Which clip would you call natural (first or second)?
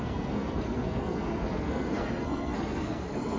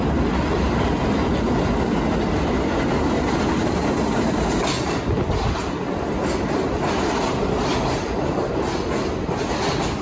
second